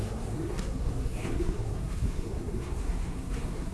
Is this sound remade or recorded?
remade